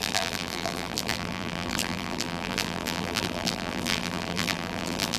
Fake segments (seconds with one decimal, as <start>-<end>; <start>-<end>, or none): 0.0-5.2